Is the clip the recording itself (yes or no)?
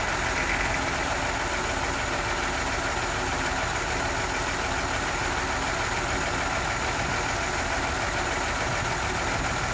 yes